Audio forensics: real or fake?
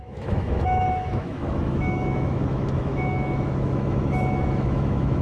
fake